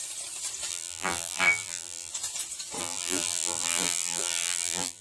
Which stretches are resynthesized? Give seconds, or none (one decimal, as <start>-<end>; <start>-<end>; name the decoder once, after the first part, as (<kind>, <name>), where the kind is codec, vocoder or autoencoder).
0.7-2.1 (vocoder, BigVGAN v2); 2.8-5.0